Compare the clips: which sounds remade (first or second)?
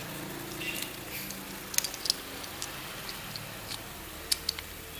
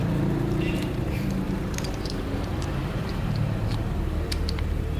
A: second